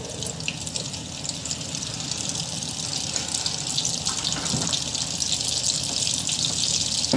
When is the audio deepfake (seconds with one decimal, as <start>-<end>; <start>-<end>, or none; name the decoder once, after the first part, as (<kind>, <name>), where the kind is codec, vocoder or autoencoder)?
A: none